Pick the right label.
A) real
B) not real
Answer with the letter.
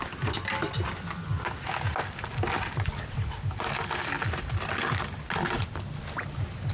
A